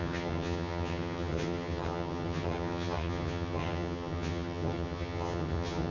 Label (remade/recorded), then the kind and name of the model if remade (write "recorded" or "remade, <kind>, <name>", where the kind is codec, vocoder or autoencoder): remade, vocoder, HiFi-GAN